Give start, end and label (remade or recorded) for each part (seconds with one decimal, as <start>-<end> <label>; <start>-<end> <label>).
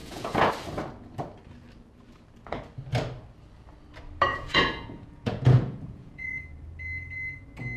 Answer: 0.0-0.5 remade; 0.5-4.3 recorded; 4.3-6.4 remade; 6.4-7.8 recorded